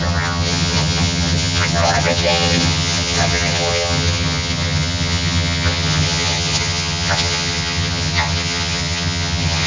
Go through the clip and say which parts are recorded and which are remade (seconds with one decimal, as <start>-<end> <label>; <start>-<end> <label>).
0.0-9.7 remade